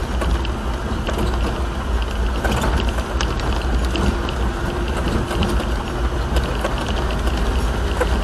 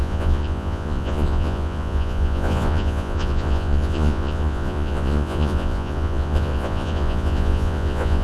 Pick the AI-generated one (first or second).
second